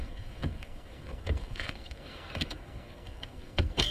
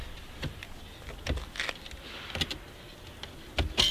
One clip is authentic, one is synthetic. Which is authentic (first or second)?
second